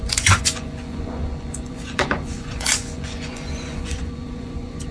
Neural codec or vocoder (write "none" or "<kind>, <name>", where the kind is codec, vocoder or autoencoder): vocoder, Vocos